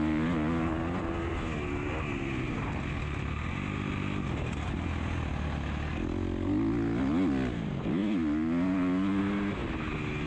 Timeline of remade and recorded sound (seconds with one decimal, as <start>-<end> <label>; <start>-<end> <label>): 0.0-10.3 recorded